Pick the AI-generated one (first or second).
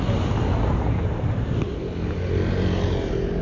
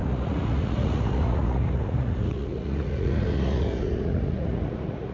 second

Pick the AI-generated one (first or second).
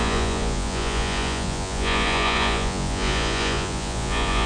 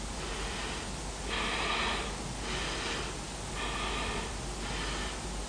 first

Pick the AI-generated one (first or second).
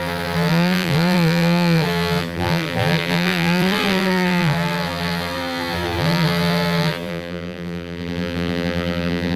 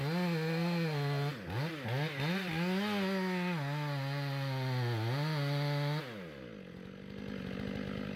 first